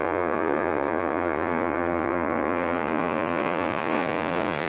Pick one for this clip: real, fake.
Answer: fake